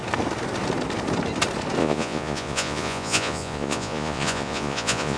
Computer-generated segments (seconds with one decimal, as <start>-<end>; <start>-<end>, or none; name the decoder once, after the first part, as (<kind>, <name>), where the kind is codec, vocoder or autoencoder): 1.8-5.2 (vocoder, Vocos)